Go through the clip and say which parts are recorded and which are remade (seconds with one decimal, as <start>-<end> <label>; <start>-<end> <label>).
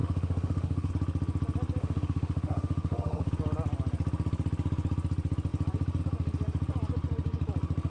0.0-0.9 remade; 0.9-1.8 recorded; 1.8-3.3 remade; 3.3-7.9 recorded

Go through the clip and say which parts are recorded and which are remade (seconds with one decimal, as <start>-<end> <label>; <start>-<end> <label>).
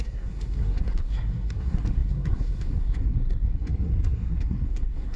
0.0-5.2 remade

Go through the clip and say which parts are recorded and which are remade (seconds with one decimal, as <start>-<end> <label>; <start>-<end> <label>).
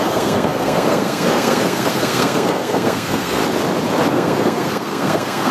0.0-3.4 remade; 3.4-4.1 recorded; 4.1-5.5 remade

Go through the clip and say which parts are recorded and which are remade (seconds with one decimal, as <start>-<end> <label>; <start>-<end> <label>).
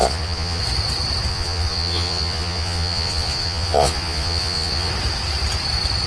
0.0-0.6 remade; 0.6-1.3 recorded; 1.3-4.9 remade; 4.9-6.1 recorded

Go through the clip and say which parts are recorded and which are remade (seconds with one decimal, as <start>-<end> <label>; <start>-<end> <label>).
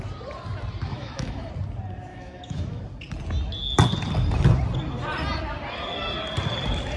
0.0-0.9 recorded; 0.9-1.5 remade; 1.5-2.1 recorded; 2.1-2.8 remade; 2.8-7.0 recorded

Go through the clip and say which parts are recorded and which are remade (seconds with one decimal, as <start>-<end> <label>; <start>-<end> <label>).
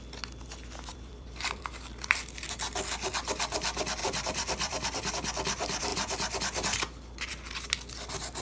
0.0-0.9 recorded; 0.9-2.2 remade; 2.2-4.0 recorded; 4.0-5.1 remade; 5.1-8.4 recorded